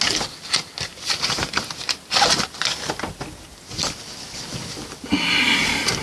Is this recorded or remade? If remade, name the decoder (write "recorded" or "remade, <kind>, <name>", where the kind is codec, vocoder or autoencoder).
recorded